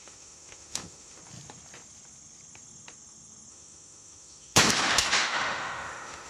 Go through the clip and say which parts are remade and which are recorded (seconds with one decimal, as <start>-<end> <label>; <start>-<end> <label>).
0.0-1.2 remade; 1.2-3.5 recorded; 3.5-6.3 remade